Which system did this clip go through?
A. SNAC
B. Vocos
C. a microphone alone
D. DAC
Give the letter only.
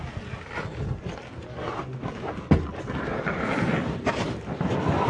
C